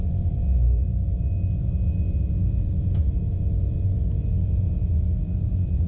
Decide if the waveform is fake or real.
real